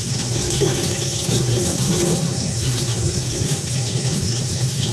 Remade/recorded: remade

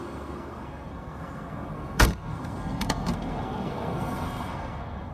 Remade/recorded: remade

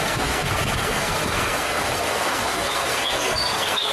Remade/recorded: remade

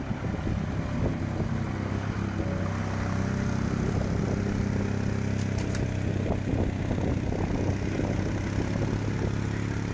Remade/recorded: recorded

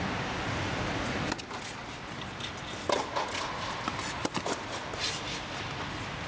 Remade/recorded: recorded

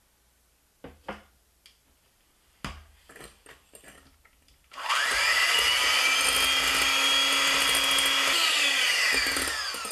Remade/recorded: recorded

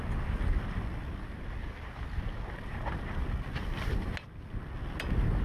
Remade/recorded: recorded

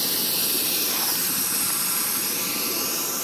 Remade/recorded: recorded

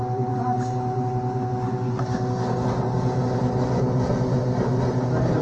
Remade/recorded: recorded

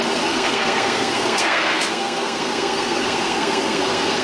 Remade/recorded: remade